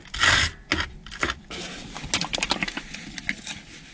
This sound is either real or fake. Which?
real